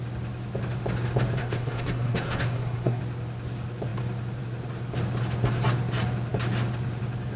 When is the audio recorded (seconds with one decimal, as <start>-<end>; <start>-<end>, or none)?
0.0-1.4; 3.0-7.4